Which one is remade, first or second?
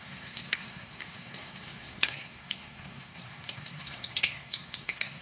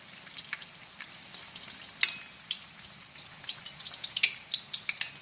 first